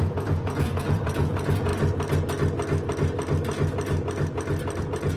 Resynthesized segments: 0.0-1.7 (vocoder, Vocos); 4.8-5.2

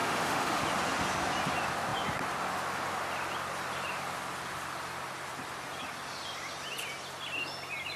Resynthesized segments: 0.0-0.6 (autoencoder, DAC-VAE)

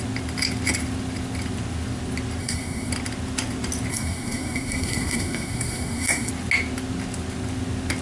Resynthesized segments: 2.4-2.9 (codec, SNAC); 3.9-6.3